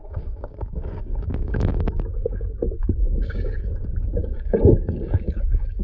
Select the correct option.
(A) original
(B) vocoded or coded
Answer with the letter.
B